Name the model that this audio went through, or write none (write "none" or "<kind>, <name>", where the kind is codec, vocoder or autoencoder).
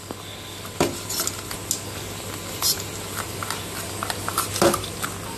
none